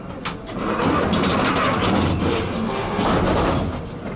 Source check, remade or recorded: recorded